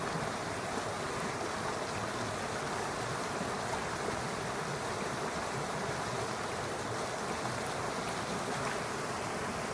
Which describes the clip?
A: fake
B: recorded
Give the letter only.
B